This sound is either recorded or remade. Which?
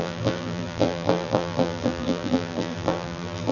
remade